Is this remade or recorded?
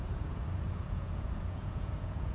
remade